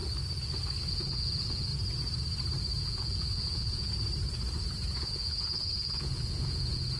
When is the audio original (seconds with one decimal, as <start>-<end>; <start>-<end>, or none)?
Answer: 0.0-0.9; 1.7-2.8; 3.9-5.0